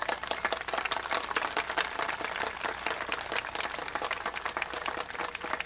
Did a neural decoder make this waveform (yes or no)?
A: no